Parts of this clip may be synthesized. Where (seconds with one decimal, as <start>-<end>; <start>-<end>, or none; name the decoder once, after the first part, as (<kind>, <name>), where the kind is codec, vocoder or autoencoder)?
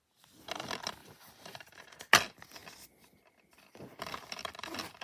1.0-2.1 (vocoder, BigVGAN v2)